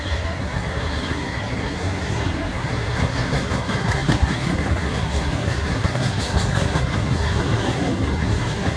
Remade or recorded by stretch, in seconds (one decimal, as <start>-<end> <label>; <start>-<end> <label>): 0.0-8.8 remade